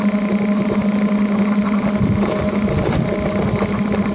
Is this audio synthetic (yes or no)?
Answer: no